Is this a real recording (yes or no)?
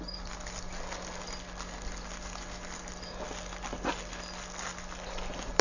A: yes